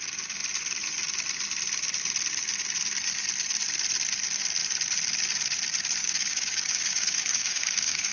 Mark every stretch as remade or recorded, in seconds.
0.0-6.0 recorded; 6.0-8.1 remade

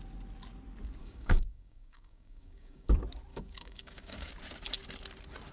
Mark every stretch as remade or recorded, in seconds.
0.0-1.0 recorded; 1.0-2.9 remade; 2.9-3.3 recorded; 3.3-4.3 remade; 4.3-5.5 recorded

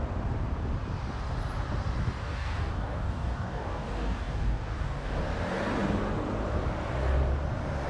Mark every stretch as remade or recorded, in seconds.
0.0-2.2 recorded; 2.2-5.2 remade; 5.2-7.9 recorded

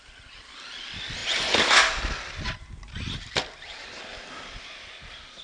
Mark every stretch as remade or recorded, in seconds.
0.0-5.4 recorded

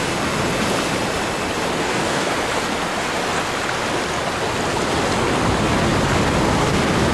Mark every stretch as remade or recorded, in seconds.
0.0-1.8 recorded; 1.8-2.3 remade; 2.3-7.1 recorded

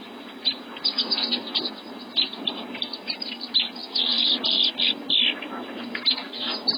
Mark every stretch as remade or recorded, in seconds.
0.0-6.8 recorded